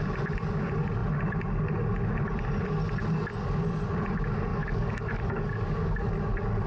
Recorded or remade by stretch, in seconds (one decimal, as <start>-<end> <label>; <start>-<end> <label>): 0.0-4.5 recorded; 4.5-6.1 remade; 6.1-6.7 recorded